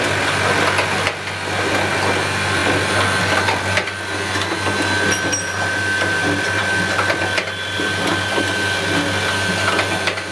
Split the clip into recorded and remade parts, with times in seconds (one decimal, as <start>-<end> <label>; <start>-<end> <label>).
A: 0.0-10.3 recorded